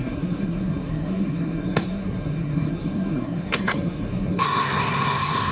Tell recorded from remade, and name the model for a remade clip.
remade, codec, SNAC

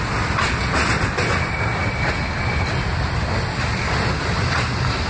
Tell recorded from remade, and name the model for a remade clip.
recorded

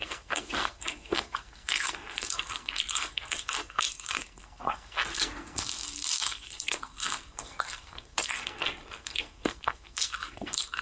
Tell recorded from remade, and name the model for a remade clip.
remade, codec, SNAC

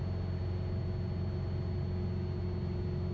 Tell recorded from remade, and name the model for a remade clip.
recorded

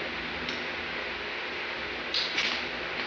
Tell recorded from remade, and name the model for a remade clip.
recorded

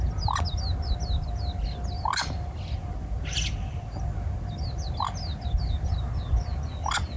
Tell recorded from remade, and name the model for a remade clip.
recorded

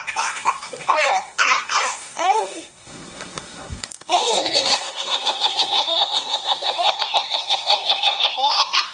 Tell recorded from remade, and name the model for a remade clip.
remade, codec, SNAC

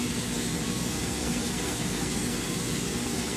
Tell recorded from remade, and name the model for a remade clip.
remade, codec, SNAC